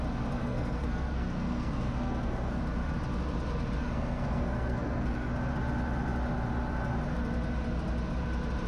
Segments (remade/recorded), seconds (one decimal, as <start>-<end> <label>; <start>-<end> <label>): 0.0-0.4 recorded; 0.4-2.6 remade; 2.6-3.8 recorded; 3.8-5.3 remade; 5.3-8.7 recorded